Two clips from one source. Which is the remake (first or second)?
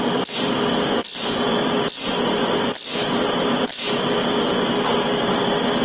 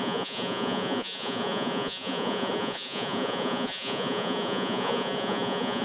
second